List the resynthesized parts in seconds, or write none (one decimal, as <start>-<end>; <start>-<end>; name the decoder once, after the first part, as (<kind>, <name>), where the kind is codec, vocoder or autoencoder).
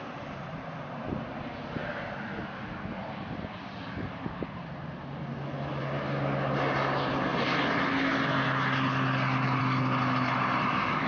none